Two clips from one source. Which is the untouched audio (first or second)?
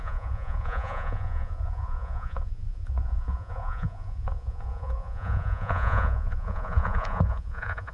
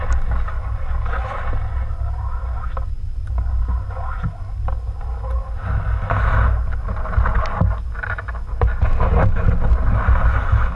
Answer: second